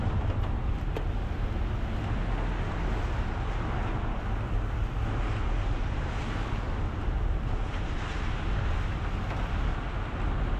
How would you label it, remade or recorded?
recorded